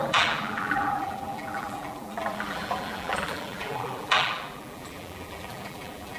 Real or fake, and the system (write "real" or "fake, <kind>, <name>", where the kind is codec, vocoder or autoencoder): fake, vocoder, BigVGAN v2